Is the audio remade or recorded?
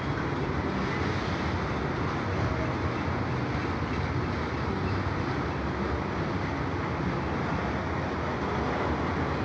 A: recorded